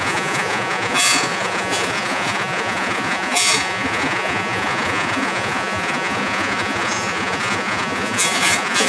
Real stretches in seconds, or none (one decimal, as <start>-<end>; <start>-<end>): none